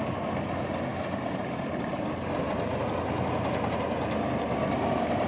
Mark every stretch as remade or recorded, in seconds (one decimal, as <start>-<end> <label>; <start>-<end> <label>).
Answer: 0.0-0.9 recorded; 0.9-2.0 remade; 2.0-5.3 recorded